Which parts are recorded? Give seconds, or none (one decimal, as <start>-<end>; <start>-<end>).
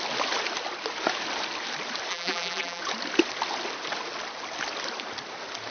0.0-2.1; 2.8-5.7